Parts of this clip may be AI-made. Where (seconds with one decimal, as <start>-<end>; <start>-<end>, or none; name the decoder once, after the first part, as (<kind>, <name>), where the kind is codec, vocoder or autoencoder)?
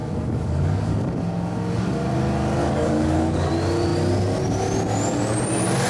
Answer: 0.0-1.1 (codec, DAC); 2.6-3.5